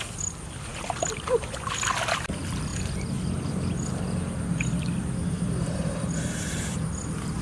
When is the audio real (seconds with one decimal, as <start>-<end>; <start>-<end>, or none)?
0.7-1.4; 2.7-5.0